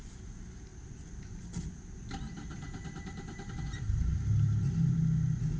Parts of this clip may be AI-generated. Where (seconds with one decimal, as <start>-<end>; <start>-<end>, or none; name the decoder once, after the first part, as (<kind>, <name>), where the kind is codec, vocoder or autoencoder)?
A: none